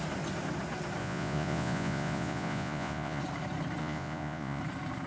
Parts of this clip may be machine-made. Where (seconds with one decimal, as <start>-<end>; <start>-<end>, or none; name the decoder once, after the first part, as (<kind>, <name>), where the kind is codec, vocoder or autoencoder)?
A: 1.0-3.2 (vocoder, Vocos); 3.8-4.6